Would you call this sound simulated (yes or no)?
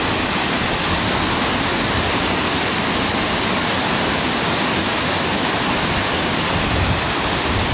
no